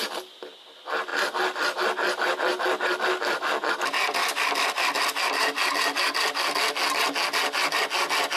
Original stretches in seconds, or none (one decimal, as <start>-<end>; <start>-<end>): 0.0-8.4